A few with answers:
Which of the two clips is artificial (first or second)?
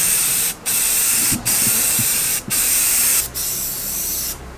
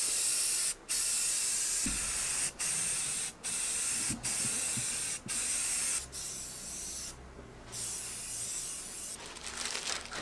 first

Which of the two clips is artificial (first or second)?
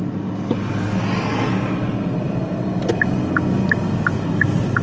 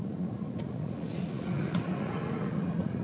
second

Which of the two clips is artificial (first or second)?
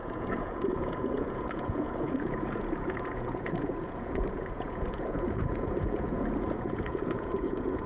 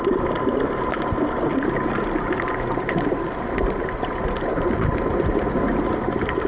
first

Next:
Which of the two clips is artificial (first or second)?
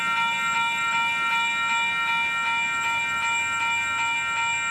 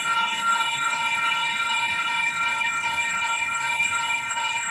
second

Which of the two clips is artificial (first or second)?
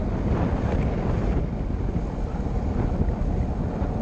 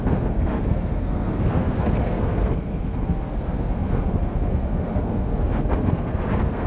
second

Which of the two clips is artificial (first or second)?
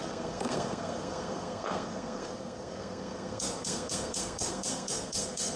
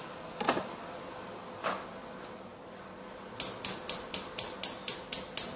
first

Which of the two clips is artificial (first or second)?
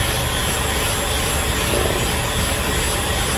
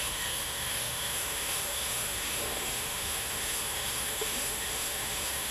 second